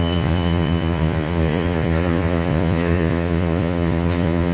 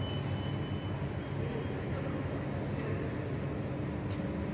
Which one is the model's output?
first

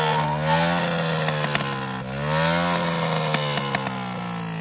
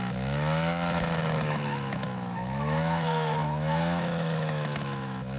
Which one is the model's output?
second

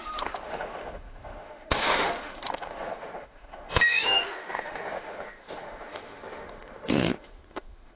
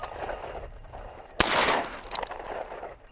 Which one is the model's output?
first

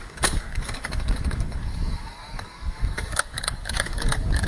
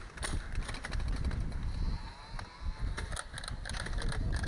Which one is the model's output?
first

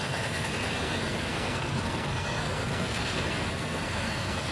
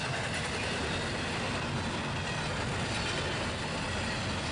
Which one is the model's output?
first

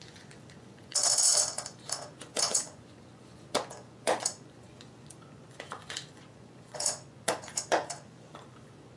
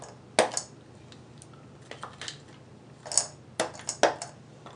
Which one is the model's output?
first